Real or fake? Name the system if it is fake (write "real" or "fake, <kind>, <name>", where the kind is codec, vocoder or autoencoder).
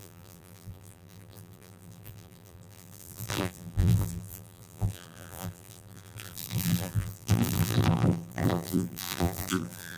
fake, vocoder, BigVGAN v2